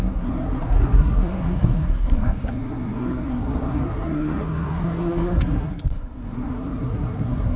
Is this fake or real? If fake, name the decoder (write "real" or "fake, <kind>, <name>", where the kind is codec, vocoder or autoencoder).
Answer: fake, codec, SNAC